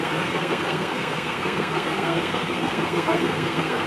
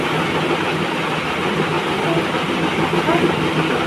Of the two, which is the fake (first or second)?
first